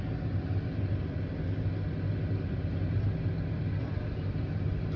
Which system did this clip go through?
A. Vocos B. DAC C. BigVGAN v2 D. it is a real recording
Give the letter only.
D